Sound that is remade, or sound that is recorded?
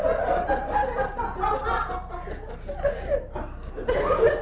recorded